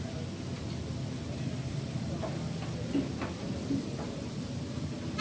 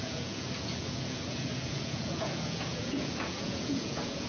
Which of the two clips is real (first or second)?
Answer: first